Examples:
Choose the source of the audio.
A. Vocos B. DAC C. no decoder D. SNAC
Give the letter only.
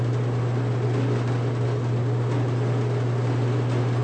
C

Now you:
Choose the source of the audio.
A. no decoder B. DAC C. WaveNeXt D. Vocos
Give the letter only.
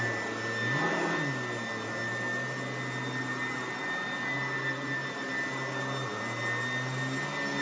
A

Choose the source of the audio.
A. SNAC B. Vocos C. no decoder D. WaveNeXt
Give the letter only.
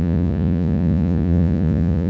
B